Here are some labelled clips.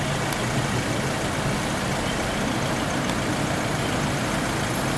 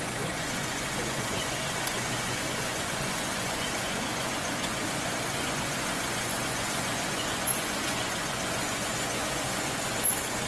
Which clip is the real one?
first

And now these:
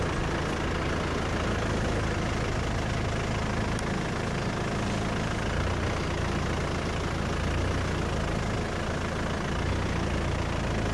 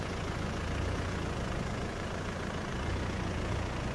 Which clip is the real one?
first